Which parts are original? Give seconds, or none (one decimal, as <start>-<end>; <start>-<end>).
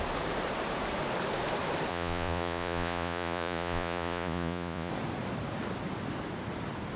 0.0-1.9; 4.9-7.0